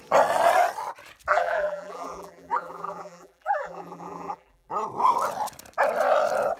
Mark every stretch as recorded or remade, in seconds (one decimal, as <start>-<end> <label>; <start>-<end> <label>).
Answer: 0.0-1.3 recorded; 1.3-4.7 remade; 4.7-6.6 recorded

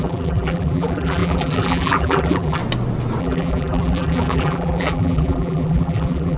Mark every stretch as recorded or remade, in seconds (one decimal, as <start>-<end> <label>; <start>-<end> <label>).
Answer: 0.0-2.6 remade; 2.6-3.2 recorded; 3.2-6.4 remade

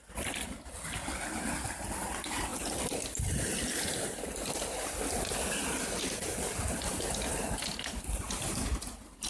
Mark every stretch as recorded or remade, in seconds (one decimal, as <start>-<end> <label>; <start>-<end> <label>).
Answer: 0.0-9.3 recorded

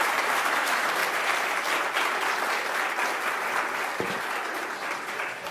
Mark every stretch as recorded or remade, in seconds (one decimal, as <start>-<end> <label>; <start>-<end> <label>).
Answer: 0.0-1.0 remade; 1.0-4.3 recorded; 4.3-5.5 remade

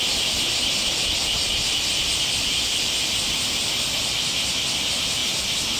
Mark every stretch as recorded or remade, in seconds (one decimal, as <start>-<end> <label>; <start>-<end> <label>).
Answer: 0.0-5.8 recorded

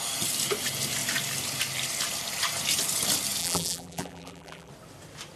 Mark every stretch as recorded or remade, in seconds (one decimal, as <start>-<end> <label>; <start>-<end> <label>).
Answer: 0.0-3.4 recorded; 3.4-4.7 remade; 4.7-5.4 recorded